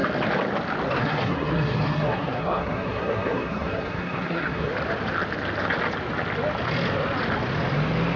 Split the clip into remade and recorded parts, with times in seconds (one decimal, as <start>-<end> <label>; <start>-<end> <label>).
0.0-1.0 recorded; 1.0-4.7 remade; 4.7-8.2 recorded